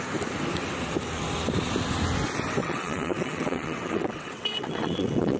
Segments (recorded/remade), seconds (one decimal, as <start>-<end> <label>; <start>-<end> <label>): 0.0-2.6 recorded; 2.6-5.4 remade